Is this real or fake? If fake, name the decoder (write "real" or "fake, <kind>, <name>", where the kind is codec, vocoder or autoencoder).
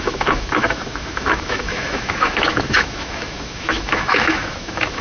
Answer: fake, autoencoder, DAC-VAE